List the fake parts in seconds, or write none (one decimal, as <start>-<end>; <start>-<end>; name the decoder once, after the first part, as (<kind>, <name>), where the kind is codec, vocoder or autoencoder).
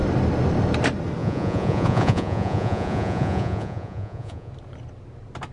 1.2-4.5 (vocoder, Vocos)